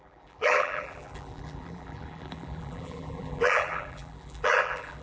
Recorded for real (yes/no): no